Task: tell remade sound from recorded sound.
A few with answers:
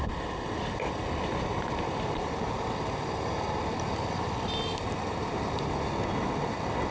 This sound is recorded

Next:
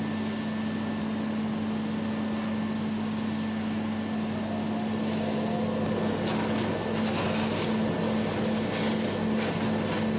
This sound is recorded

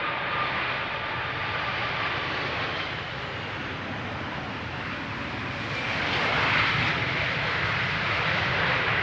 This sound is recorded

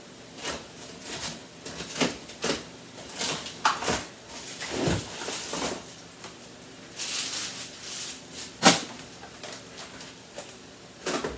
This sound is recorded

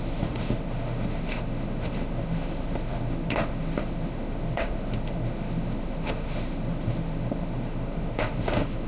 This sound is remade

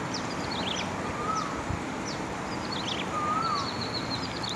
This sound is recorded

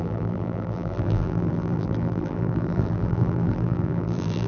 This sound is remade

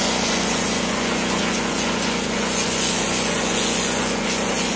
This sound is remade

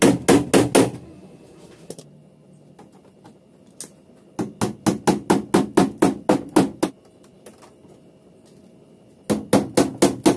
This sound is recorded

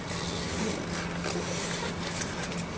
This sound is recorded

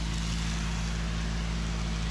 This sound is recorded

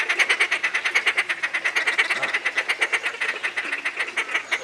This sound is recorded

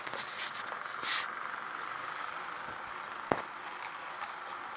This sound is recorded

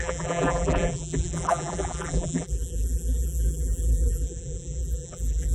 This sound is remade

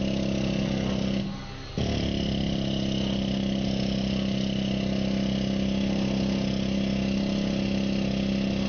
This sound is recorded